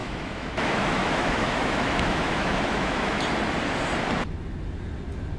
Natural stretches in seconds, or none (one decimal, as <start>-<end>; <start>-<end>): 3.2-5.4